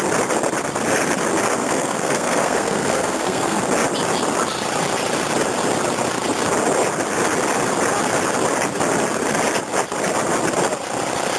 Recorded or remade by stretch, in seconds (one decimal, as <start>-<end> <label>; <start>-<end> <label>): 0.0-1.6 recorded; 1.6-3.6 remade; 3.6-11.4 recorded